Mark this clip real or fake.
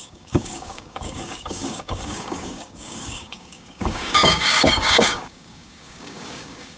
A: fake